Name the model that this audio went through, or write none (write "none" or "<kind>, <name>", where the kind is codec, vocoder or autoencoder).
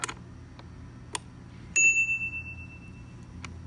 none